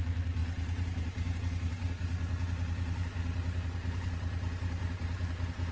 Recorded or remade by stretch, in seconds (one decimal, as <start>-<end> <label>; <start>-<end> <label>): 0.0-5.7 recorded